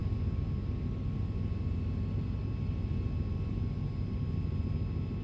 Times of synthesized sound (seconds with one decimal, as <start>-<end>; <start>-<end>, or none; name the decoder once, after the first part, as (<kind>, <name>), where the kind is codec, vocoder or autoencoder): none